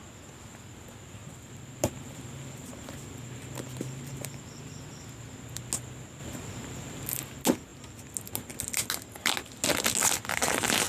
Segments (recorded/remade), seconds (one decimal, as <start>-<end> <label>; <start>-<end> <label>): 0.0-1.2 recorded; 1.2-4.8 remade; 4.8-6.2 recorded; 6.2-7.1 remade; 7.1-10.9 recorded